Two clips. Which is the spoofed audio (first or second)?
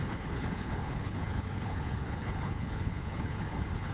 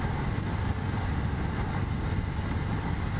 first